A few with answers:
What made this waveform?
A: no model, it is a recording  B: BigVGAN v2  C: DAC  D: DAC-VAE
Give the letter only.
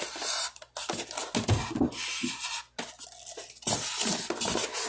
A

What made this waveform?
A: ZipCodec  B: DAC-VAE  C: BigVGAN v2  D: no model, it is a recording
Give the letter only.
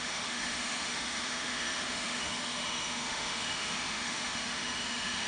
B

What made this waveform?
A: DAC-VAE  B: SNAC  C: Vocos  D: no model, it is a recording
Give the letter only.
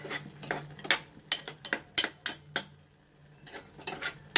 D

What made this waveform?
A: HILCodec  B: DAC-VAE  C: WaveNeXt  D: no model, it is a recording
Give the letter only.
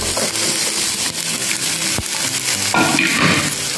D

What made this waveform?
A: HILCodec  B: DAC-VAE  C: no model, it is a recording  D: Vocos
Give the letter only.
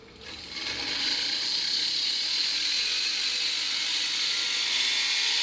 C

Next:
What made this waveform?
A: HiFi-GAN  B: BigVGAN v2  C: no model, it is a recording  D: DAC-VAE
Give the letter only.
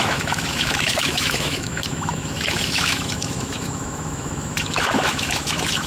D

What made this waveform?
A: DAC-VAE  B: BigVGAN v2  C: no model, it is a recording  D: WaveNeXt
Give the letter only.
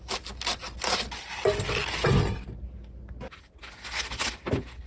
C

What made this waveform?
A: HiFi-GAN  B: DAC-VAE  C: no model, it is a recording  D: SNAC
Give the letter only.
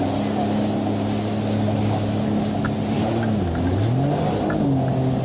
C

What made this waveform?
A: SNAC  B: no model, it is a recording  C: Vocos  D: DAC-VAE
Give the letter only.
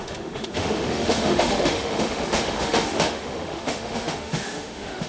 D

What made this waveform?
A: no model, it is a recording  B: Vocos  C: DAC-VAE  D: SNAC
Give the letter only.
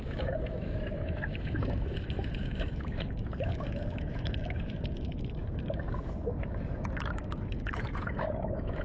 C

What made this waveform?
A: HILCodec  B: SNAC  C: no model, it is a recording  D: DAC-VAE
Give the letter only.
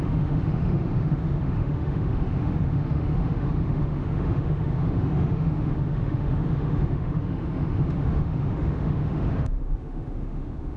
D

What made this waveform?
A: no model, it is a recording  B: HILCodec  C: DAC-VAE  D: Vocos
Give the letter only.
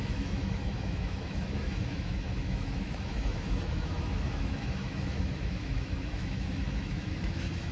C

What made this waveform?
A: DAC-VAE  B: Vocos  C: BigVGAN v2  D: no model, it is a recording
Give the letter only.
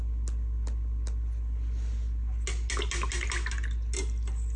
D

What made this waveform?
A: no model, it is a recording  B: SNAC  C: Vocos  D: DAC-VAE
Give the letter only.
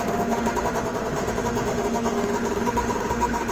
D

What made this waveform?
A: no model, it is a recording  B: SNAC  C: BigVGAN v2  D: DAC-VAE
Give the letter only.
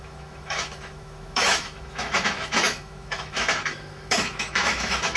D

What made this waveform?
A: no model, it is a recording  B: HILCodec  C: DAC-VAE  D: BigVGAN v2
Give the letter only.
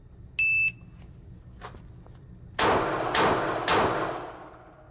A